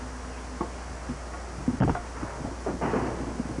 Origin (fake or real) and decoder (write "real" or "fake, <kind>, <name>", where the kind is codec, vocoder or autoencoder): real